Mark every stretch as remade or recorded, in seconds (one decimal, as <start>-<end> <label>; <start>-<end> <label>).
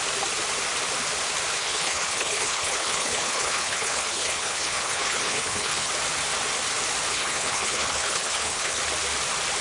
0.0-1.6 recorded; 1.6-5.9 remade; 5.9-7.1 recorded; 7.1-8.8 remade; 8.8-9.6 recorded